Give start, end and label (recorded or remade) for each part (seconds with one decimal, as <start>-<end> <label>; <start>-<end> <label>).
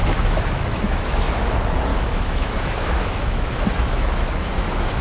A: 0.0-1.4 remade; 1.4-1.9 recorded; 1.9-5.0 remade